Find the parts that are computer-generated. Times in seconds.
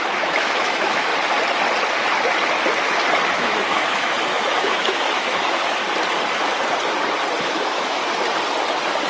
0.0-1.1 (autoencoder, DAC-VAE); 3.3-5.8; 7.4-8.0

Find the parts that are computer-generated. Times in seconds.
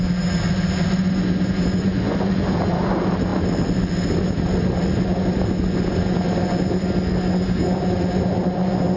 1.7-2.3 (vocoder, Vocos)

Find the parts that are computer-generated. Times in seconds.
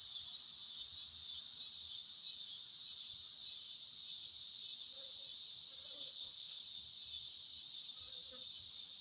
6.0-6.6 (codec, HILCodec)